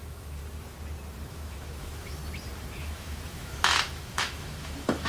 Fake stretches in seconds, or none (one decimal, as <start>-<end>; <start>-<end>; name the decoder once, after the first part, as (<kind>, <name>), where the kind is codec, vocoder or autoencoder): 0.0-0.4 (autoencoder, DAC-VAE); 1.3-2.2; 2.8-5.1